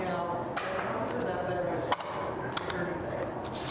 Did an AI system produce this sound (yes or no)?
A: no